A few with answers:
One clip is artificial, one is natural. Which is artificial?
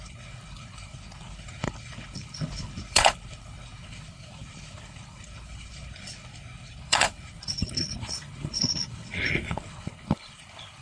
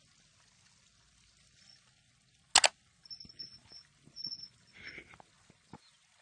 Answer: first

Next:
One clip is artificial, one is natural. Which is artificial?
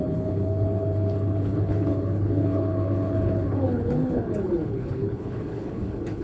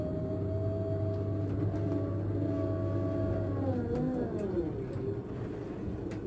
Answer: first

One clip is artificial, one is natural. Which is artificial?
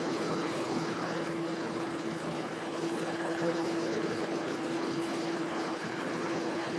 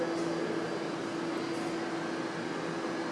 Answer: first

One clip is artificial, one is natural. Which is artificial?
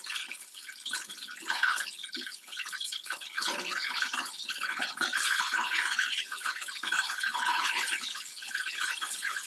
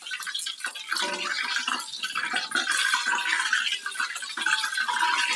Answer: first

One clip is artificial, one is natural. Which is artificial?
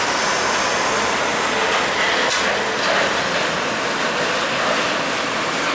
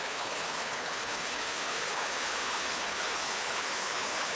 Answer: second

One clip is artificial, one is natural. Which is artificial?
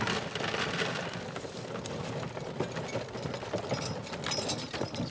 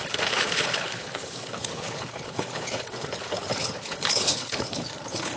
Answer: second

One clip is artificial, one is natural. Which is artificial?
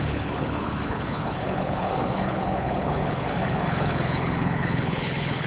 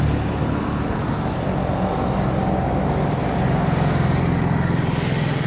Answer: first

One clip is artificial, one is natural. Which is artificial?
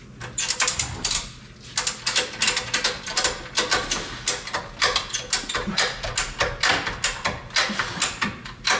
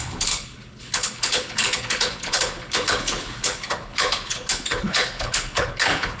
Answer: second